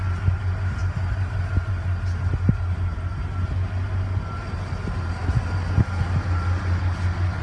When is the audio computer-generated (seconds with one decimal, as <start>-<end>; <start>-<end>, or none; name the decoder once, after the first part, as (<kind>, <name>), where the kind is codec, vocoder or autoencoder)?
none